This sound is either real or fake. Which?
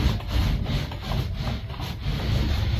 real